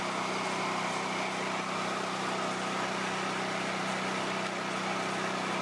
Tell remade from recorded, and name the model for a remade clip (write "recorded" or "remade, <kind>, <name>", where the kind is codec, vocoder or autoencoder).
recorded